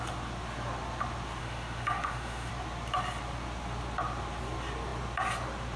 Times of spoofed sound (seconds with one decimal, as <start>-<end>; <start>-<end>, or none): 1.4-2.5